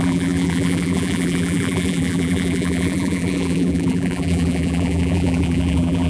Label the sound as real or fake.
fake